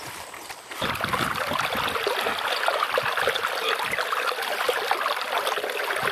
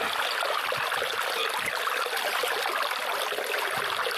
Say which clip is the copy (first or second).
first